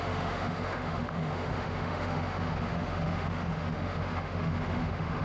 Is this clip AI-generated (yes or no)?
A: yes